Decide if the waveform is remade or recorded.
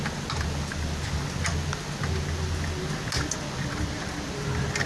recorded